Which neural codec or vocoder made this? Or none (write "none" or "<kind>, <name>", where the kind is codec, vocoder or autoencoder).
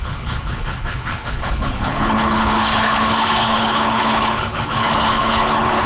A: codec, HILCodec